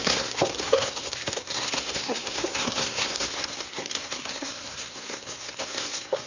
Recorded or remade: remade